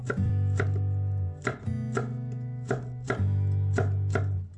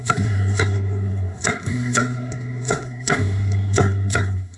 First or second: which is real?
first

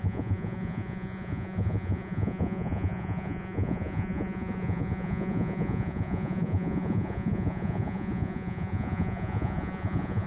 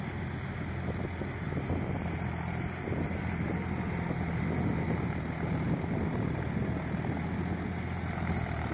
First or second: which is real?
second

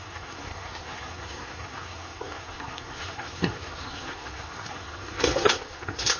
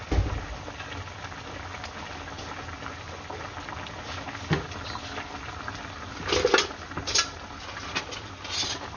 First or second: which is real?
second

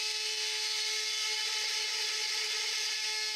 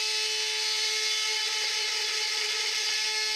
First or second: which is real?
second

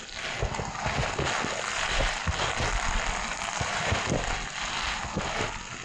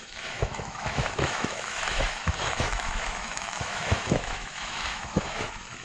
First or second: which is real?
first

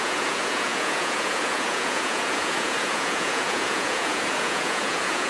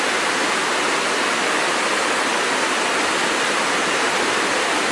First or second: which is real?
second